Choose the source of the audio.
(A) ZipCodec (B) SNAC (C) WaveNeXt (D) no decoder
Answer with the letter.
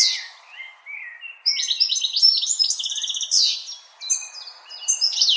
D